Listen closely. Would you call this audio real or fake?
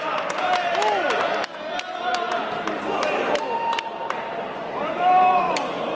real